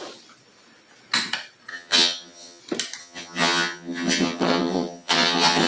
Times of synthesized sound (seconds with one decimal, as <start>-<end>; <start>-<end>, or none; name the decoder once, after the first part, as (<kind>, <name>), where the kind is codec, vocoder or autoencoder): 1.7-2.6 (vocoder, HiFi-GAN); 3.0-5.7

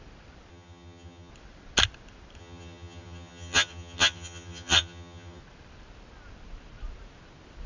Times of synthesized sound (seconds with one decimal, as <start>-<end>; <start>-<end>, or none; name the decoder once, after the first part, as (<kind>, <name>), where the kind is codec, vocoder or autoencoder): 0.5-1.3 (vocoder, HiFi-GAN); 2.4-5.4